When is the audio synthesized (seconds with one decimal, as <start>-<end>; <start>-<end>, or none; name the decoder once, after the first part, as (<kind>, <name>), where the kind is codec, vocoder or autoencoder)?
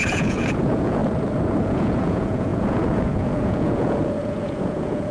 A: 0.0-1.0 (vocoder, Vocos); 1.6-5.1